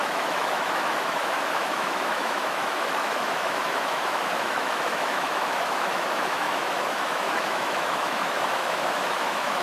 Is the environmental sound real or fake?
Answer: fake